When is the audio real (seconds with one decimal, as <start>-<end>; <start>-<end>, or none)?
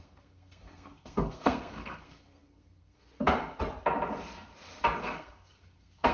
3.1-5.0